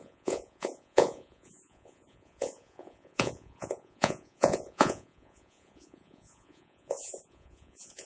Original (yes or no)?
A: no